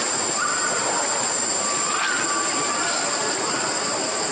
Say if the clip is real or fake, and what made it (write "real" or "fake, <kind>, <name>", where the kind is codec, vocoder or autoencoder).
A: real